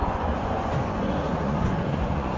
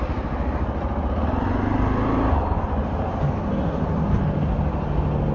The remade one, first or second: first